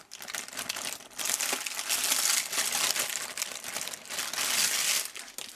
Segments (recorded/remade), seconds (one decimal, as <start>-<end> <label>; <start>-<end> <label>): 0.0-5.6 recorded